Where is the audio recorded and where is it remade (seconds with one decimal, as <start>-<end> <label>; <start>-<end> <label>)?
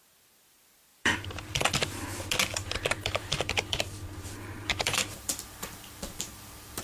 0.0-0.9 recorded; 0.9-1.6 remade; 1.6-2.5 recorded; 2.5-6.8 remade